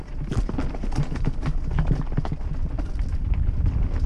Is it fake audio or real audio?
real